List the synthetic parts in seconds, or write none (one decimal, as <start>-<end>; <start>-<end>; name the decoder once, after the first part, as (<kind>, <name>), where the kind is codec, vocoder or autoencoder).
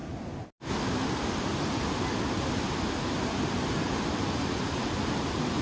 none